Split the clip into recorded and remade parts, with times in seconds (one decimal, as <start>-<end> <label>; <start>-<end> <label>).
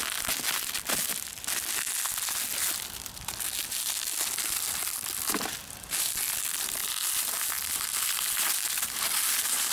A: 0.0-9.7 recorded